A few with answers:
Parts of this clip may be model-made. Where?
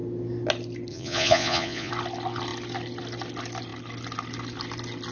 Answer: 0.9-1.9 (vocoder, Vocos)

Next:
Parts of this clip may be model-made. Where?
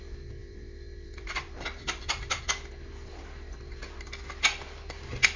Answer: 0.4-2.4 (vocoder, BigVGAN v2)